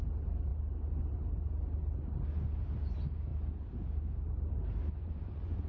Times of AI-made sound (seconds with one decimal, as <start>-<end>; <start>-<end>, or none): 5.0-5.7